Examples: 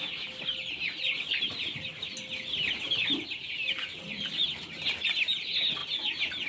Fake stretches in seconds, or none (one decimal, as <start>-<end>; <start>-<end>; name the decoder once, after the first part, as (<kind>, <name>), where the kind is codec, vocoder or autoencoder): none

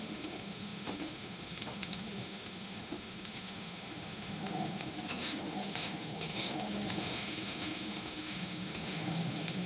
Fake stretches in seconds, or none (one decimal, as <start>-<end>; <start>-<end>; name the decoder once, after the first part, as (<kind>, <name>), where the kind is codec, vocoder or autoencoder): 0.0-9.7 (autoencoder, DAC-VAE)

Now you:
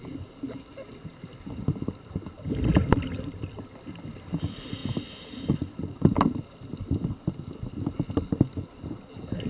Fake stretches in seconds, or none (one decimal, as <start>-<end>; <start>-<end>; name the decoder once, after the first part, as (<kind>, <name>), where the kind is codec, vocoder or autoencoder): none

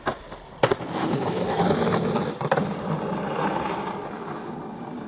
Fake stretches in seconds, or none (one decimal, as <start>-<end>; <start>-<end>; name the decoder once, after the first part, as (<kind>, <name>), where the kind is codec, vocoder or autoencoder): 1.0-1.6 (codec, HILCodec)

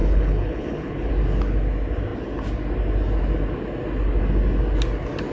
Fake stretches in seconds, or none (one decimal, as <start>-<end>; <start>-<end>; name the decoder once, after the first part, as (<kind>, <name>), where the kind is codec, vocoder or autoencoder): 0.0-1.1 (codec, HILCodec)

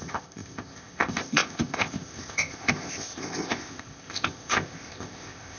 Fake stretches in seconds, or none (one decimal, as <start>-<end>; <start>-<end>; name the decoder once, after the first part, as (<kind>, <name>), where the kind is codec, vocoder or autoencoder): 0.0-5.6 (codec, ZipCodec)

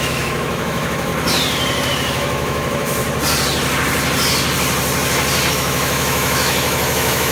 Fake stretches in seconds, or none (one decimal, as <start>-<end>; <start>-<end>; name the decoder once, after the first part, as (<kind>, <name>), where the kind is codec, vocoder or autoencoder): 0.0-1.1 (autoencoder, DAC-VAE); 1.9-3.0; 5.5-7.3